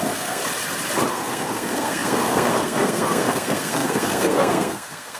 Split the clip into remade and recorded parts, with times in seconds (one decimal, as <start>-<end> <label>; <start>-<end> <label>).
0.0-0.4 remade; 0.4-1.1 recorded; 1.1-5.2 remade